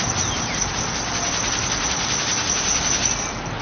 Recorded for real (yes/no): yes